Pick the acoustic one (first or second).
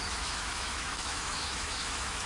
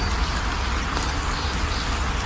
second